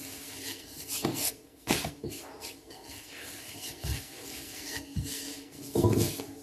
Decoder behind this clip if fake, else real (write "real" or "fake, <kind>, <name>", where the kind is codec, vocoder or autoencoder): fake, codec, SNAC